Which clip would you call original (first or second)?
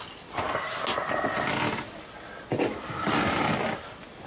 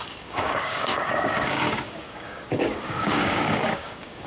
first